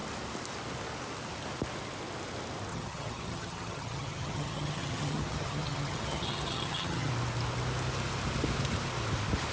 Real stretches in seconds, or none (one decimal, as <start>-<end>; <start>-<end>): 0.0-2.7; 7.1-9.5